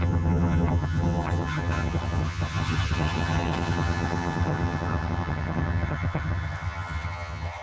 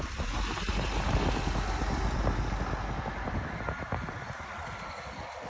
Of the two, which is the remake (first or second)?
first